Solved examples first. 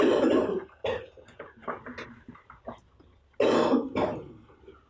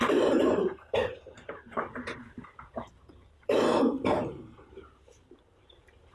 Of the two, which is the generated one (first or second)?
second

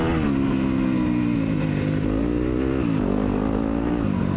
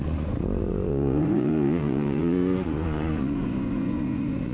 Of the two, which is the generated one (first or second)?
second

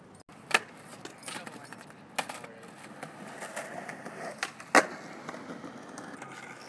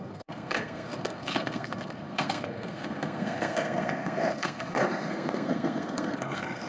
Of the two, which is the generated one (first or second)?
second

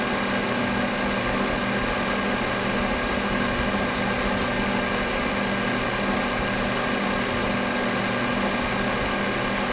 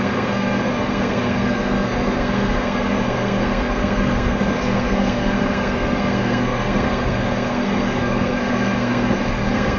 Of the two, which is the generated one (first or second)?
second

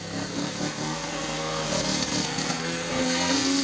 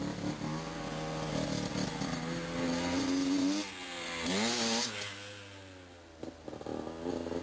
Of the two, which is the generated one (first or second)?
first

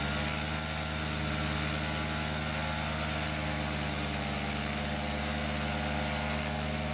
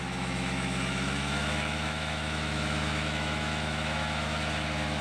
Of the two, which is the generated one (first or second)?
second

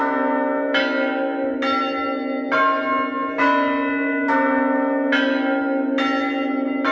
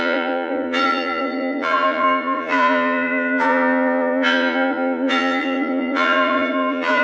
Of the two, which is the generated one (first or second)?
second